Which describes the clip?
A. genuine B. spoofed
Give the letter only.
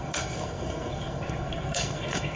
B